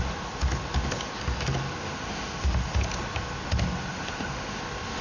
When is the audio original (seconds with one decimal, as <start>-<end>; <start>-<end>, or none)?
0.0-1.8; 2.8-3.9; 4.6-5.0